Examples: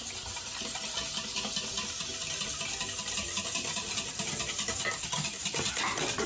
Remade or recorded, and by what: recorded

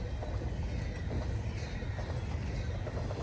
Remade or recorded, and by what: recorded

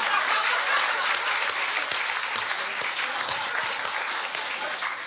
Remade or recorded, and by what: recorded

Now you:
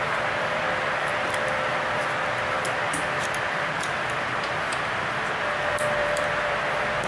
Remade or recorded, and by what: remade, vocoder, BigVGAN v2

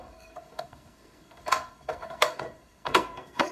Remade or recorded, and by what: remade, codec, SNAC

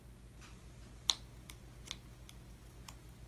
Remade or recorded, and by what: recorded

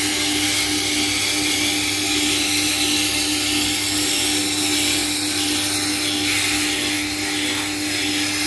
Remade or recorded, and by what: recorded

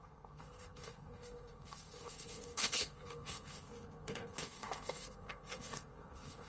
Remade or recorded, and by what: remade, codec, SNAC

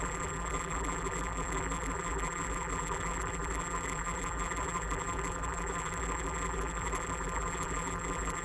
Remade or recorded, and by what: remade, vocoder, BigVGAN v2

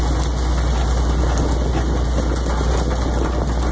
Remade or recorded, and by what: recorded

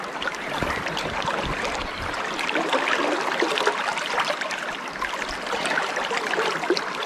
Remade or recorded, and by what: remade, vocoder, BigVGAN v2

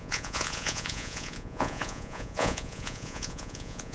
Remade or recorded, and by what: remade, vocoder, Vocos